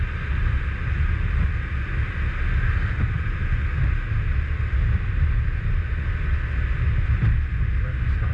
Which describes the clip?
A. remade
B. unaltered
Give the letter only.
B